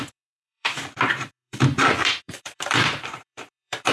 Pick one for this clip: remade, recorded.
remade